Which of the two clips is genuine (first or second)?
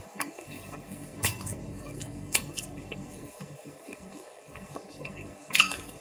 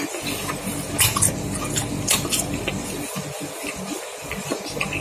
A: second